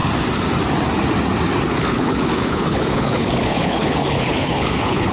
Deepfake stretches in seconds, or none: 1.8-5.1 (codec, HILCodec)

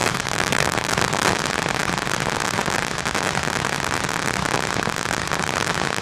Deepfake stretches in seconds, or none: 0.0-1.3 (vocoder, BigVGAN v2)

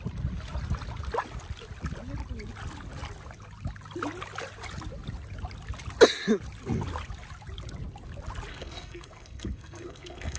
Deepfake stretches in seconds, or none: 8.5-10.4 (codec, SNAC)